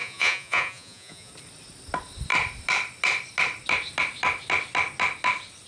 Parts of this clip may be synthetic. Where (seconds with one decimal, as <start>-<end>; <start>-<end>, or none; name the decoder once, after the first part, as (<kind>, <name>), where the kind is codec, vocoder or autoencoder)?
0.0-1.3 (vocoder, Vocos)